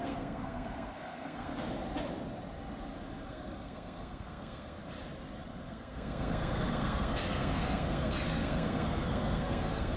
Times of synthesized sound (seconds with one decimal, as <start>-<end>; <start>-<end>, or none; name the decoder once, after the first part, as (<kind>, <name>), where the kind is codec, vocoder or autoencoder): 0.0-1.5 (codec, SNAC); 3.3-4.8; 5.7-10.0